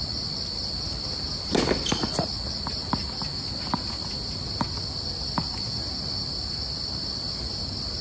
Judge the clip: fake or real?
real